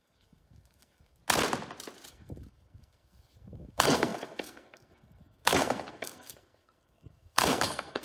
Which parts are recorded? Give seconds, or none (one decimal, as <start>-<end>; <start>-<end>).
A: 1.2-2.1